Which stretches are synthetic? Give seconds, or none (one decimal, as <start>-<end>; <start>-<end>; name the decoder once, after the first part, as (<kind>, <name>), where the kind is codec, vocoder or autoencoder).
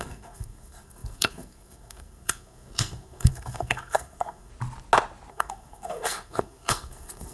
0.0-4.5 (codec, SNAC); 5.3-7.3